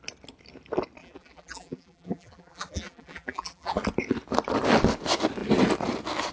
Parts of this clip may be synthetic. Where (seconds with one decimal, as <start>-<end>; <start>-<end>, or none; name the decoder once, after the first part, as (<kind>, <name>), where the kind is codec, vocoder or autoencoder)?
1.0-3.8 (vocoder, BigVGAN v2)